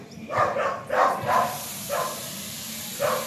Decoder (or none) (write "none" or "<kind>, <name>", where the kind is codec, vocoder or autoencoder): none